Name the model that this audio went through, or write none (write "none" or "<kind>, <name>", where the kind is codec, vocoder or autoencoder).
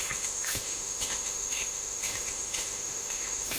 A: autoencoder, DAC-VAE